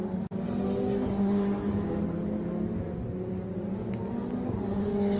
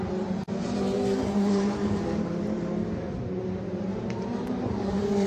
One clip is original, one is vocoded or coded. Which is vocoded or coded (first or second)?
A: second